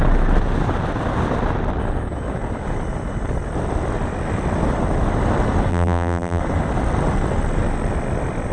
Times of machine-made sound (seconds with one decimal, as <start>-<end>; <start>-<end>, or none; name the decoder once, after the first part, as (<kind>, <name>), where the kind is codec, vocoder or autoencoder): 5.7-6.4 (vocoder, BigVGAN v2)

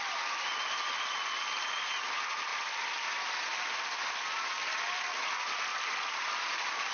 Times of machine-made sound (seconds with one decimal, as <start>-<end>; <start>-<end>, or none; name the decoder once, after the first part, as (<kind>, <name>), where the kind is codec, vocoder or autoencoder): none

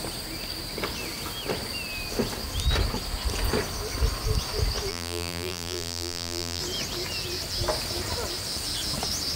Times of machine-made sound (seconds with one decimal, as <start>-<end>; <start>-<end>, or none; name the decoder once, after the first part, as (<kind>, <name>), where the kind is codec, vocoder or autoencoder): 4.9-6.6 (vocoder, BigVGAN v2)

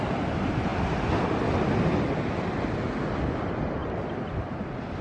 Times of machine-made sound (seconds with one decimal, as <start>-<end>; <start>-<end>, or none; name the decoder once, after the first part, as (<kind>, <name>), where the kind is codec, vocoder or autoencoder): none

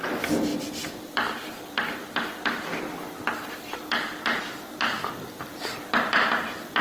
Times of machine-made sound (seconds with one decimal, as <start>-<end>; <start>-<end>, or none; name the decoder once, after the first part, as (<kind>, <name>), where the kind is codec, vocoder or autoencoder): 0.5-4.4 (vocoder, BigVGAN v2)

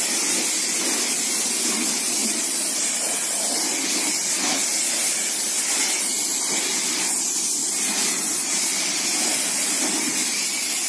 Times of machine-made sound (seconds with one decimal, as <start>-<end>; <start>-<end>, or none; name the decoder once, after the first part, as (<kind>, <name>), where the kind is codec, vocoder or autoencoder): 2.2-3.4 (vocoder, BigVGAN v2); 5.0-5.8; 7.6-10.2